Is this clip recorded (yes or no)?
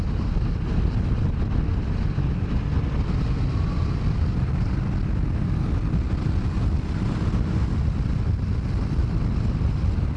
yes